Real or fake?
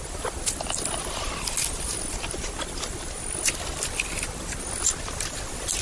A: real